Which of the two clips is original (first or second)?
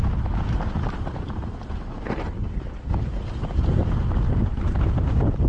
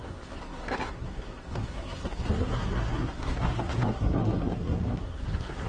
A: first